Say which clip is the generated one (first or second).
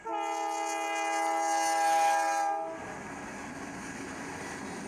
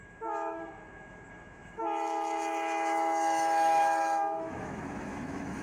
second